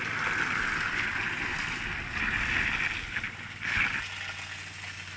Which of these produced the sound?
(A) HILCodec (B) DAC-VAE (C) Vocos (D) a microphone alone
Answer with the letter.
D